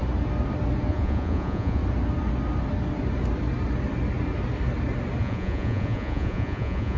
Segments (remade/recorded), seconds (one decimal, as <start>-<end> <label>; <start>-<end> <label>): 0.0-0.9 recorded; 0.9-1.8 remade; 1.8-5.2 recorded; 5.2-7.0 remade